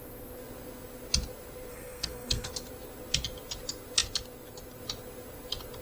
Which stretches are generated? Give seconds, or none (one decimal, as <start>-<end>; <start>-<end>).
1.7-2.5